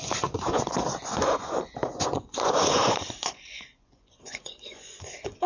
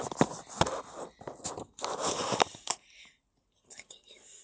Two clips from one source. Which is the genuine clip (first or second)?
second